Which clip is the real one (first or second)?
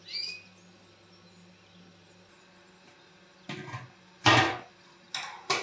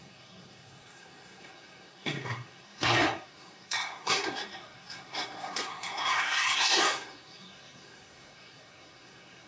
first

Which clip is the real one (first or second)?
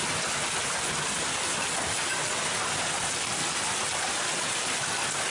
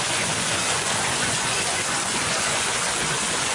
first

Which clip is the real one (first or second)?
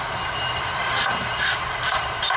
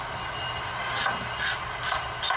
second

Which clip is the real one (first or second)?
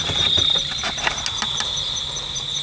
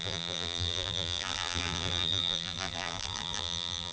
first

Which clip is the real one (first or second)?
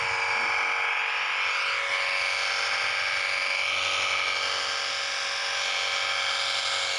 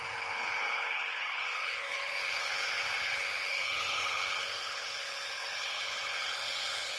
first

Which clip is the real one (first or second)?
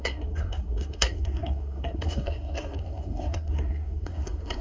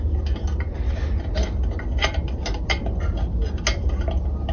second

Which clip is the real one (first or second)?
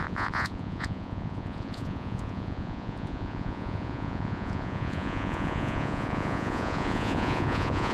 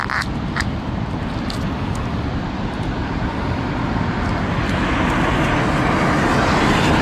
second